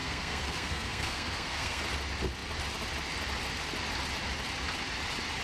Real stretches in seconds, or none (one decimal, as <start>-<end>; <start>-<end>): 1.8-5.4